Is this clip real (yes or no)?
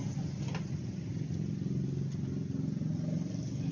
yes